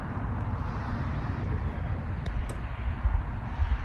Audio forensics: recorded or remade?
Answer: recorded